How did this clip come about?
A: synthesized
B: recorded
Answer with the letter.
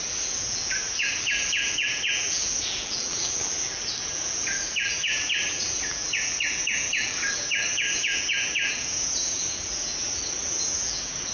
A